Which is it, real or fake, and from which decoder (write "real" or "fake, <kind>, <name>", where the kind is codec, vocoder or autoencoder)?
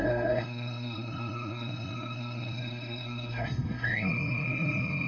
fake, codec, SNAC